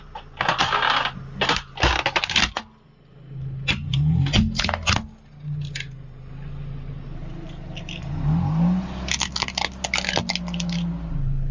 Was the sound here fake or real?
real